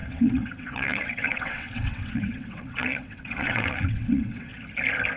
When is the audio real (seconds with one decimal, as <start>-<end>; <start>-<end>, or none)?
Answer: 4.5-5.2